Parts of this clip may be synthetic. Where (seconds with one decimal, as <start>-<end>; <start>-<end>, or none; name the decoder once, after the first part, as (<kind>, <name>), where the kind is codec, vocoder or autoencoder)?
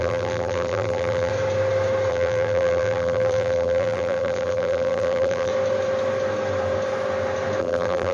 0.0-1.3 (vocoder, BigVGAN v2); 2.1-5.5; 7.6-8.1